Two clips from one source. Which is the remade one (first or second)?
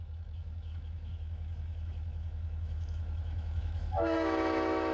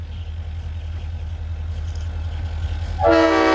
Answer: first